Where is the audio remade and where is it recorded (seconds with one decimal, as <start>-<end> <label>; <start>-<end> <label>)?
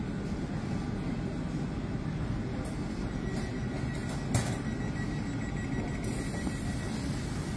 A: 0.0-7.6 recorded